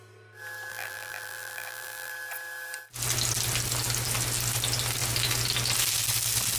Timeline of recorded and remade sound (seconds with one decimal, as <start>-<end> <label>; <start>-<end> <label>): 0.0-0.7 recorded; 0.7-2.1 remade; 2.1-6.6 recorded